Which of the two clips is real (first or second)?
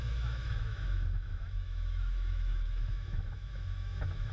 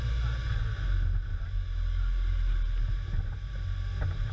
second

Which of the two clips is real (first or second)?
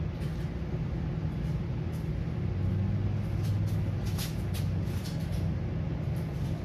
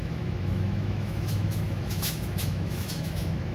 first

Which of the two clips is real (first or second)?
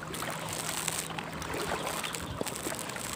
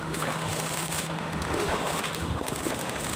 first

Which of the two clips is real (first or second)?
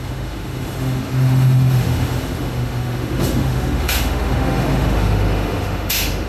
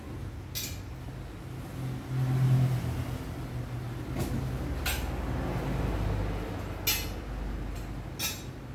second